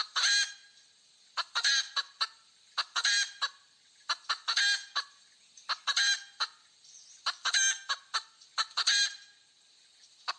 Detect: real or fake real